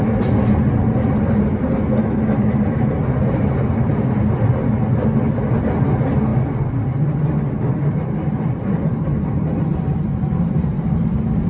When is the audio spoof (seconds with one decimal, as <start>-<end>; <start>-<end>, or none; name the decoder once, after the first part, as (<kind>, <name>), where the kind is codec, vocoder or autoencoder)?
3.2-3.9 (vocoder, BigVGAN v2)